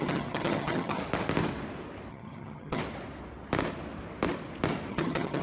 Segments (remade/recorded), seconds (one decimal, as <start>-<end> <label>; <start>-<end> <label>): 0.0-1.0 remade; 1.0-2.1 recorded; 2.1-2.8 remade; 2.8-4.9 recorded; 4.9-5.4 remade